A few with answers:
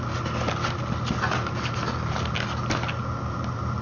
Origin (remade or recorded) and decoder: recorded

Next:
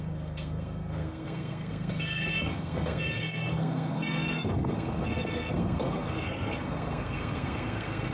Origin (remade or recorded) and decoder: remade, codec, SNAC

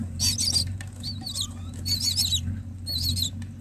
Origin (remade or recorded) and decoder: recorded